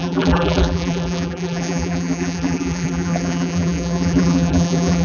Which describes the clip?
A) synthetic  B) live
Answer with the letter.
A